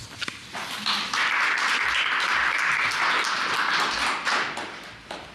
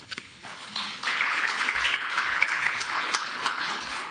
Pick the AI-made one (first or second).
second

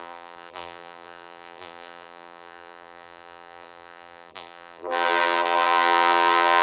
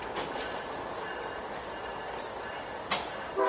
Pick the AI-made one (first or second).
first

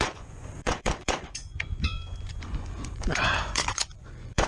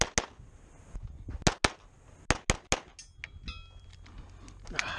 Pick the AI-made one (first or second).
first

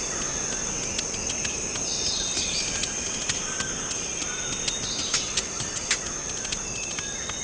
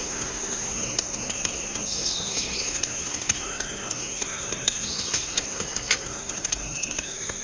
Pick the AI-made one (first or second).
second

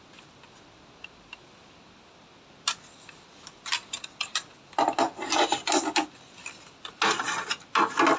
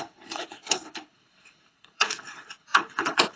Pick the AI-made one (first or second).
second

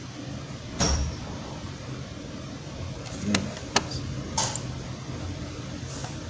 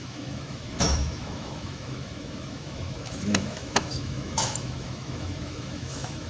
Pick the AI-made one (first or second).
second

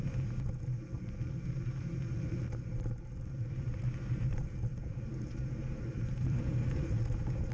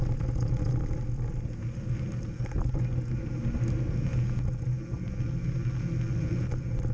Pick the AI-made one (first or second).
first